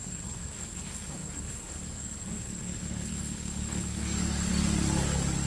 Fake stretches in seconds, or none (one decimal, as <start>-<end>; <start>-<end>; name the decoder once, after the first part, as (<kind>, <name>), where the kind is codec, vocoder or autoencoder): 0.0-4.5 (codec, SNAC)